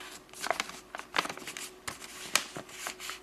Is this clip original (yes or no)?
yes